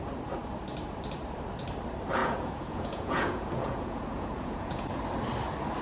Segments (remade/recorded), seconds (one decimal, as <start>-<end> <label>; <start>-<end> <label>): 0.0-2.2 recorded; 2.2-5.0 remade; 5.0-5.8 recorded